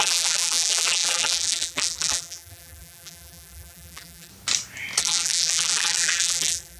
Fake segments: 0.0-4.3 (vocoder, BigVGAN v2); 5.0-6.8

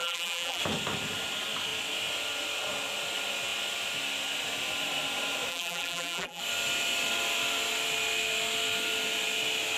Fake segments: 0.0-0.6 (vocoder, BigVGAN v2); 5.5-6.4